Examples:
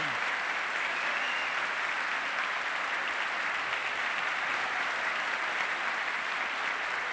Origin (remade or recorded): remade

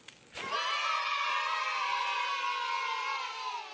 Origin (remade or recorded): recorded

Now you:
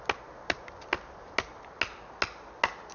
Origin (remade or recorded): recorded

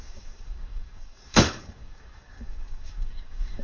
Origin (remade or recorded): remade